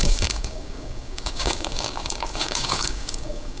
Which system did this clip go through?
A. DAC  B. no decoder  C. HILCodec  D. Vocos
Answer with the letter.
A